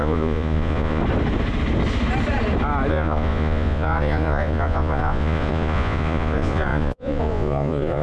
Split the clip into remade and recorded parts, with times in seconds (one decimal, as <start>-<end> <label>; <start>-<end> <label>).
0.0-1.0 remade; 1.0-2.9 recorded; 2.9-8.0 remade